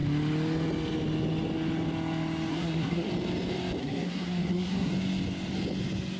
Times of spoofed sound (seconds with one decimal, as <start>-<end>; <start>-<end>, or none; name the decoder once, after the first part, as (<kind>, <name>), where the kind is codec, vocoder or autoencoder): 2.5-3.1 (codec, SNAC); 3.8-4.9

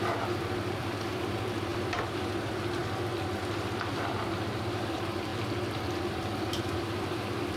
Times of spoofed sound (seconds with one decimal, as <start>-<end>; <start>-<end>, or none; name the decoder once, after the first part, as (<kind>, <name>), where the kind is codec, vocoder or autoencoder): 0.0-2.8 (vocoder, BigVGAN v2); 4.0-5.3; 6.1-7.6